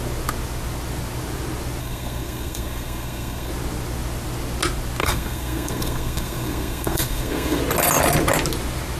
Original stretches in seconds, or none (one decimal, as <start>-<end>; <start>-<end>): 0.0-1.8; 3.5-5.0; 7.6-9.0